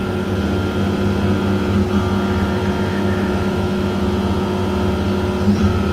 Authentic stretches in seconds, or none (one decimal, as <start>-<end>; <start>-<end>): 0.0-2.6; 4.1-5.9